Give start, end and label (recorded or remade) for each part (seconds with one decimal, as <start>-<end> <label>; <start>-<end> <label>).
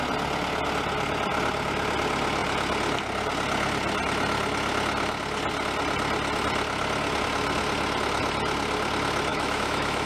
0.0-9.3 recorded; 9.3-10.1 remade